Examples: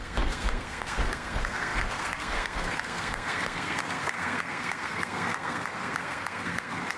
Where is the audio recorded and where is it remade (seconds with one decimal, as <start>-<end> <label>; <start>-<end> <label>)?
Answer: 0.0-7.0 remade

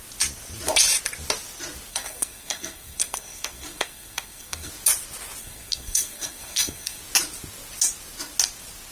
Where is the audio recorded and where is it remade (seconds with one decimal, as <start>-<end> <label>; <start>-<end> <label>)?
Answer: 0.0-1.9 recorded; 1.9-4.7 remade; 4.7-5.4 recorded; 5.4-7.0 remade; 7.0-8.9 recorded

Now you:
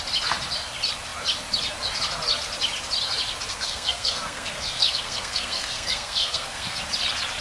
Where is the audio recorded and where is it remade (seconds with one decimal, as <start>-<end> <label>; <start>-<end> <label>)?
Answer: 0.0-3.5 recorded; 3.5-6.8 remade; 6.8-7.4 recorded

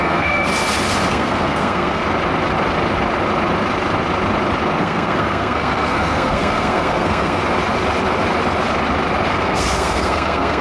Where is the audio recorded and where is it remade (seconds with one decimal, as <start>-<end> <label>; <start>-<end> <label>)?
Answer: 0.0-0.5 remade; 0.5-1.1 recorded; 1.1-2.0 remade; 2.0-4.8 recorded; 4.8-7.4 remade; 7.4-9.4 recorded; 9.4-10.6 remade